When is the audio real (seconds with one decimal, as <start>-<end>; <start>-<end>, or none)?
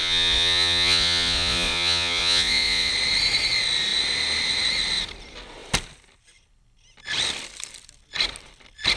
2.9-9.0